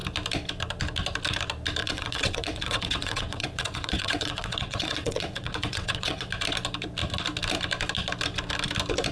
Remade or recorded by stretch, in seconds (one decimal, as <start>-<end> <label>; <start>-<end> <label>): 0.0-1.8 recorded; 1.8-6.3 remade; 6.3-9.1 recorded